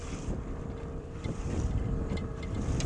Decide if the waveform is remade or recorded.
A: remade